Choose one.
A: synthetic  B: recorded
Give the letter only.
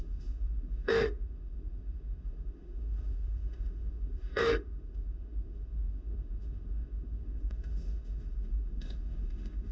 A